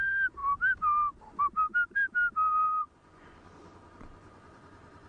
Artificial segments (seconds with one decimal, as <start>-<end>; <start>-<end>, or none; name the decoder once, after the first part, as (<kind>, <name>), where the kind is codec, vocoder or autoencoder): 2.8-5.1 (vocoder, Vocos)